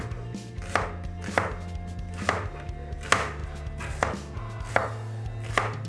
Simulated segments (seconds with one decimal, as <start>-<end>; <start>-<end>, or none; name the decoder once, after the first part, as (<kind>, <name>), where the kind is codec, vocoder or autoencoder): none